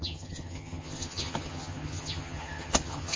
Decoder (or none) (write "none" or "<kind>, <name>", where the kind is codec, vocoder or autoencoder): vocoder, HiFi-GAN